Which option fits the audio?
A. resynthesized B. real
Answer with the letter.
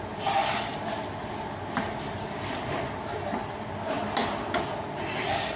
B